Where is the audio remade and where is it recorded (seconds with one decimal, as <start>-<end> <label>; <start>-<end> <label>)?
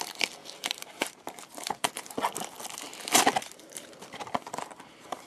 0.0-0.4 recorded; 0.4-1.9 remade; 1.9-5.3 recorded